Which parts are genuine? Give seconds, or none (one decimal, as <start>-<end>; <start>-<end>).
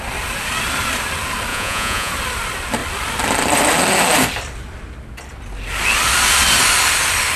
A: 0.0-1.5; 2.1-7.4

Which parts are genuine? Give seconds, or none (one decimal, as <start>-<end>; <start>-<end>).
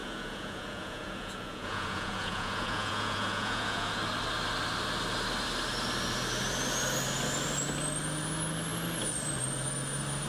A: 4.0-10.3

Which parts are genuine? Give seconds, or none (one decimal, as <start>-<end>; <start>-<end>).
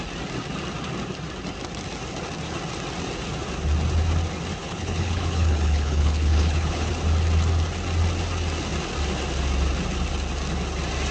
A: 0.0-4.6; 6.9-11.1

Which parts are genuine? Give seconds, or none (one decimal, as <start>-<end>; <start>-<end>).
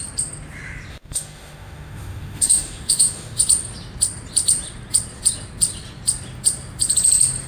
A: 0.0-0.9; 3.4-7.5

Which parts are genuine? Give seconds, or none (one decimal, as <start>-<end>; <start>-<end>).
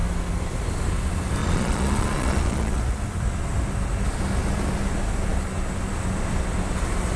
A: 0.0-1.4; 2.8-7.2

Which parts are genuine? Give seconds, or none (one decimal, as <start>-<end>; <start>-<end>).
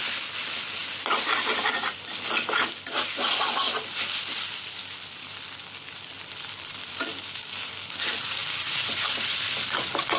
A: 0.0-0.8; 4.2-8.4; 9.6-10.2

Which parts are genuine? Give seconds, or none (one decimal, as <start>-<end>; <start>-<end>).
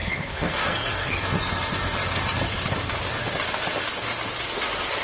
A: 1.2-5.0